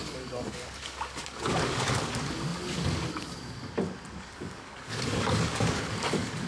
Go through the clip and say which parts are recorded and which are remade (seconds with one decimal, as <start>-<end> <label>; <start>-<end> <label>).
0.0-6.5 remade